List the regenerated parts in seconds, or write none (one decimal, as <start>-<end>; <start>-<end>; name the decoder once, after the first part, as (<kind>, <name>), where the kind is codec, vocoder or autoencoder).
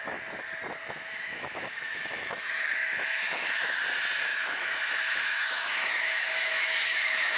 0.8-3.8 (autoencoder, DAC-VAE); 4.3-7.4